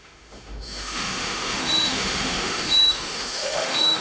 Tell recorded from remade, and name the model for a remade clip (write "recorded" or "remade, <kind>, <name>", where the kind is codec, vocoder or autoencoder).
remade, autoencoder, DAC-VAE